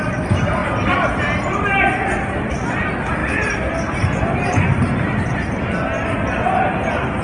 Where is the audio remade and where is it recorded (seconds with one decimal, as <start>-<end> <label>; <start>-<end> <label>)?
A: 0.0-0.6 recorded; 0.6-1.6 remade; 1.6-3.2 recorded; 3.2-4.9 remade; 4.9-7.2 recorded